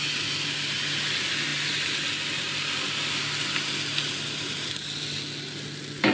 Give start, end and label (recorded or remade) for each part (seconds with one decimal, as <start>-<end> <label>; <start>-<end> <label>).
0.0-6.1 recorded